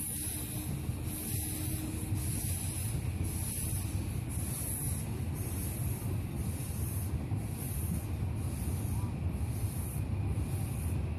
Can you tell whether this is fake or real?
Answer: real